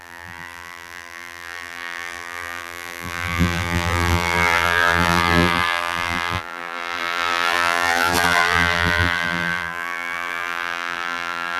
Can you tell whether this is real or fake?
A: fake